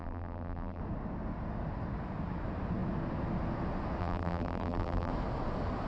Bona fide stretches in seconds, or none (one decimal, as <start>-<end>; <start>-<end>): 0.8-4.0; 5.1-5.9